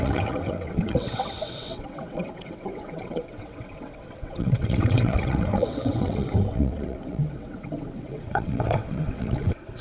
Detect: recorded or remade remade